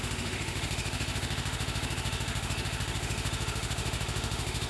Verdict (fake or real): fake